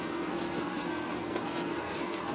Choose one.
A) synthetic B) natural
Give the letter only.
A